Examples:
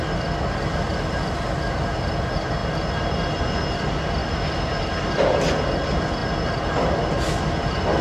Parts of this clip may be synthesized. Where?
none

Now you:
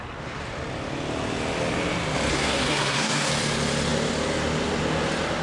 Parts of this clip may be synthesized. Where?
2.3-3.3 (codec, SNAC)